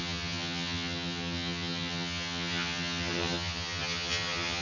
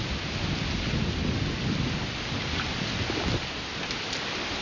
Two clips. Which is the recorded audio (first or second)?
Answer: second